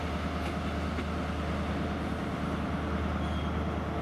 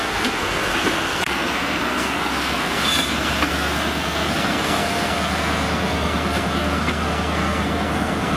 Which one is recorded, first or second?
first